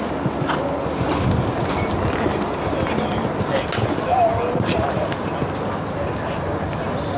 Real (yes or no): yes